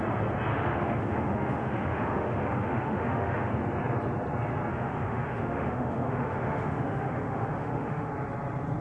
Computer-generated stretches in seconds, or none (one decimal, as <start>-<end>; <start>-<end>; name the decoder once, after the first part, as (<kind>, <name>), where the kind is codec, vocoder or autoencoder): 0.5-3.5 (autoencoder, DAC-VAE); 4.7-8.1

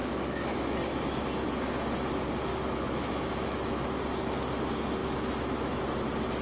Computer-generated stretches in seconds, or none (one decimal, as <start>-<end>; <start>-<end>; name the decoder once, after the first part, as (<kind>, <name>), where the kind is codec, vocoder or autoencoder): 0.0-1.2 (autoencoder, DAC-VAE); 2.5-3.9; 5.0-5.8

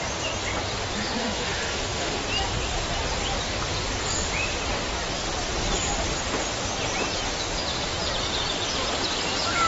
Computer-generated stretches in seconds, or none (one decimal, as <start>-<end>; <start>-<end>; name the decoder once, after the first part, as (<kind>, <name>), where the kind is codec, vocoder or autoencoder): 1.2-2.2 (autoencoder, DAC-VAE)